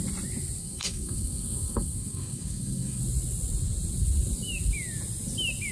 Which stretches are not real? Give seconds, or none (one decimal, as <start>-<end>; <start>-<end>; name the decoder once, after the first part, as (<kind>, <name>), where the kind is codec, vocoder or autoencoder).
0.6-3.0 (codec, SNAC)